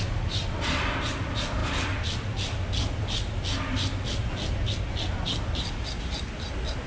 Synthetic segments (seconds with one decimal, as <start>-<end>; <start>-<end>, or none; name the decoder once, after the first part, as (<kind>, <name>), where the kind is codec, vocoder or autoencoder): none